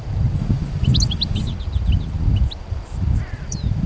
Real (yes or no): yes